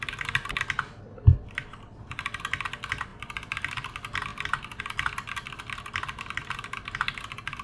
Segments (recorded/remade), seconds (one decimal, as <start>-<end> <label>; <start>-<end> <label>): 0.0-7.6 recorded